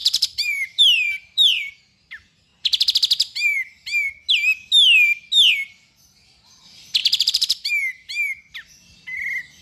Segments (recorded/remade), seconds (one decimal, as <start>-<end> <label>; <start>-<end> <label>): 0.0-1.7 remade; 1.7-7.0 recorded; 7.0-7.7 remade; 7.7-9.6 recorded